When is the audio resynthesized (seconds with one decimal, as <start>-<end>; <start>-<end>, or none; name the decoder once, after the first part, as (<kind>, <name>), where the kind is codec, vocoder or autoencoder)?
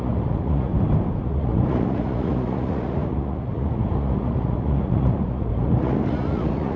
0.0-0.7 (vocoder, Vocos); 1.2-6.8